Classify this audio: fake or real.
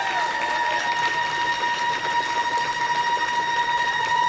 real